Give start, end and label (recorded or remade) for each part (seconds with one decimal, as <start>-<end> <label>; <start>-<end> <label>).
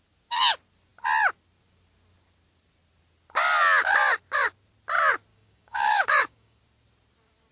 0.0-5.3 recorded; 5.3-6.6 remade; 6.6-7.5 recorded